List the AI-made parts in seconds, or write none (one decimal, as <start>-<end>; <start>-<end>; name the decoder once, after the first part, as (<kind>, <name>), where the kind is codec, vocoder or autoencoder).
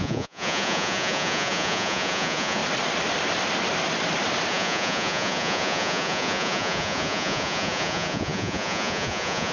0.0-2.6 (vocoder, Vocos); 4.5-9.5